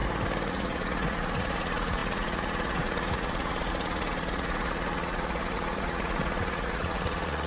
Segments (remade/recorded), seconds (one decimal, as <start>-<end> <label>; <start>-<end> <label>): 0.0-0.5 recorded; 0.5-7.5 remade